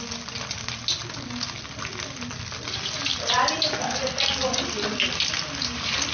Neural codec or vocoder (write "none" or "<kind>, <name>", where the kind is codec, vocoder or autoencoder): none